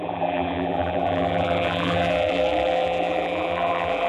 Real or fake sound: fake